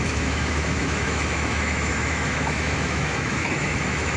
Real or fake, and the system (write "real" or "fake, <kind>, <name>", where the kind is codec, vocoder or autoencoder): fake, autoencoder, DAC-VAE